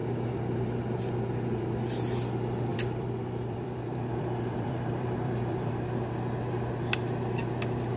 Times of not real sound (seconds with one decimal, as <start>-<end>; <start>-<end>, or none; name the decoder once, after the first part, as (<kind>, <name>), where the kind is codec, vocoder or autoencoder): 2.7-5.7 (vocoder, BigVGAN v2)